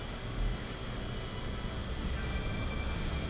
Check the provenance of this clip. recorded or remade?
recorded